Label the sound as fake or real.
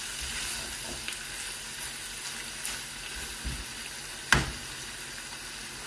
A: real